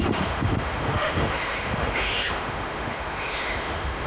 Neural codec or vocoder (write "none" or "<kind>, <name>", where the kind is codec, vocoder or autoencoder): autoencoder, DAC-VAE